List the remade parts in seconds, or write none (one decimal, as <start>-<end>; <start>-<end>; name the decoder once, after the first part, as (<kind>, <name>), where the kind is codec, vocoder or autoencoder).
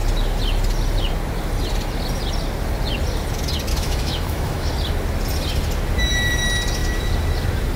3.7-4.7 (autoencoder, DAC-VAE)